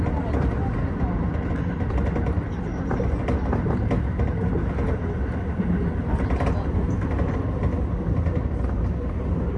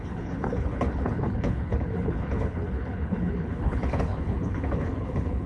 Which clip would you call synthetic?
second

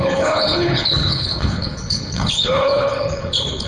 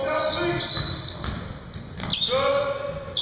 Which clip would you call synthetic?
first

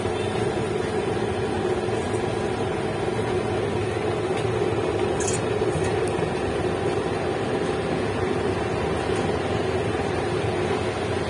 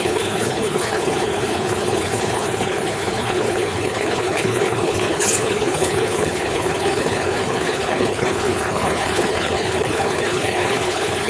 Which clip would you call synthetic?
second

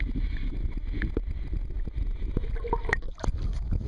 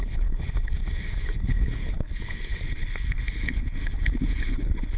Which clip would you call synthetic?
second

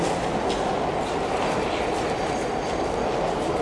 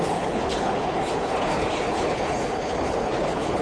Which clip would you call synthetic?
second